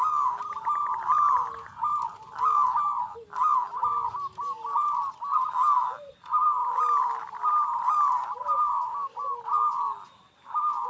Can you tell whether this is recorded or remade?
recorded